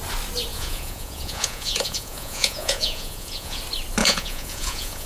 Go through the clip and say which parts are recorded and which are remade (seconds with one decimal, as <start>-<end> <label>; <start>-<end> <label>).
0.0-0.5 recorded; 0.5-3.6 remade; 3.6-4.0 recorded; 4.0-5.1 remade